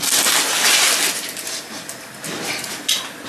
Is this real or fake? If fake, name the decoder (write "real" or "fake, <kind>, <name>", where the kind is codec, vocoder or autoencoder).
real